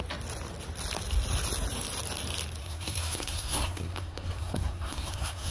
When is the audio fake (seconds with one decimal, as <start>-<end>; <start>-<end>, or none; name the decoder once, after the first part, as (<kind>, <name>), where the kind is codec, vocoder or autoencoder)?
2.6-5.5 (codec, SNAC)